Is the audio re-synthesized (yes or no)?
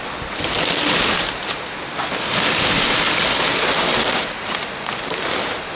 no